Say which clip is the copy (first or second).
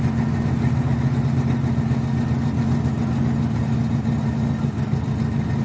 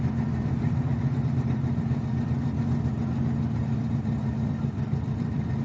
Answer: second